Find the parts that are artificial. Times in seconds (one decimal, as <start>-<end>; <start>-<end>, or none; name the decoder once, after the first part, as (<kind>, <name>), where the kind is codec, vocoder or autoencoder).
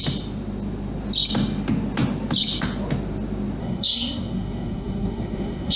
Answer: 3.6-5.8 (codec, SNAC)